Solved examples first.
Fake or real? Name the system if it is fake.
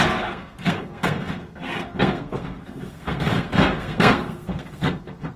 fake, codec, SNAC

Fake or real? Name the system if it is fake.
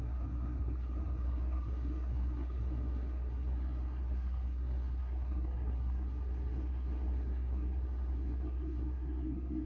fake, codec, SNAC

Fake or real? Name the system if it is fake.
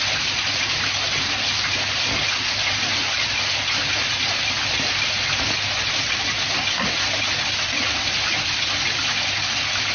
real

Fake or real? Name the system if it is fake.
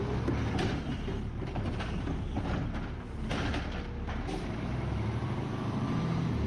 real